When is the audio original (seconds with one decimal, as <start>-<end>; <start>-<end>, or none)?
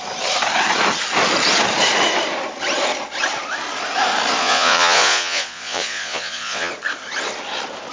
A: 0.0-4.4; 6.7-7.9